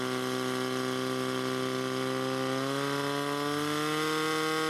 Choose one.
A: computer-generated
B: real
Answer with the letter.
B